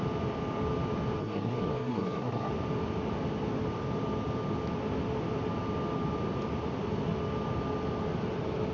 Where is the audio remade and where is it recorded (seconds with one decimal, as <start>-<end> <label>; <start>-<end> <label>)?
0.0-1.2 recorded; 1.2-2.5 remade; 2.5-8.7 recorded